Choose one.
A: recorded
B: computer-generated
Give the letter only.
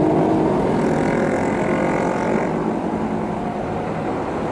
A